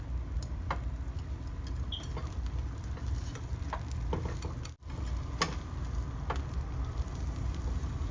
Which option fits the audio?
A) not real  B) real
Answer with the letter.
B